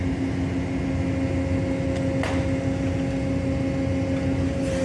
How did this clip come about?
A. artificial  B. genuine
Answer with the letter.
B